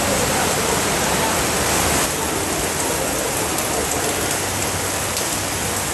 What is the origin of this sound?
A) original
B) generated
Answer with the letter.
A